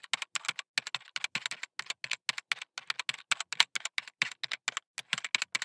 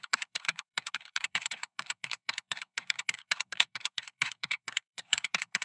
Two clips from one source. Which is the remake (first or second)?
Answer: second